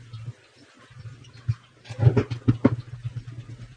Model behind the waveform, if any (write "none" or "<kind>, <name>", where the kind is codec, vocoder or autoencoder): none